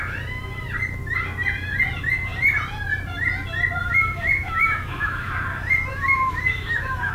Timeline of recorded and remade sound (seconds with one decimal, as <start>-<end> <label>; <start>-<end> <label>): 0.0-3.8 recorded; 3.8-5.3 remade; 5.3-5.9 recorded; 5.9-7.1 remade